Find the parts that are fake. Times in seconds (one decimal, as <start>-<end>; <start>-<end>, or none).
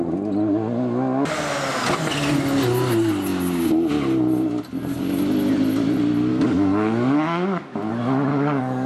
6.3-7.9; 8.3-8.9